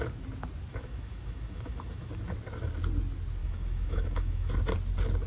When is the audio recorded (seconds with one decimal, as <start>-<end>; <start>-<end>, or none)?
0.0-0.7; 2.1-3.4; 4.5-5.3